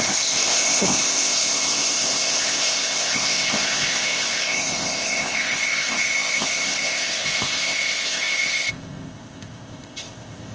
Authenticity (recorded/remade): remade